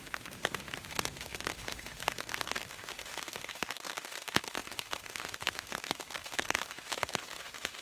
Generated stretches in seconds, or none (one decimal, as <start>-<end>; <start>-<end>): 0.0-7.8